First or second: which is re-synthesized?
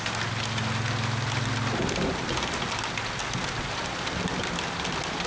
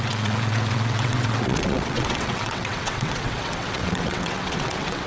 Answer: second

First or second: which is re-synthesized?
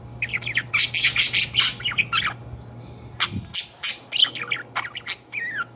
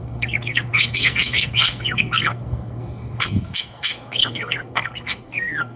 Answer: second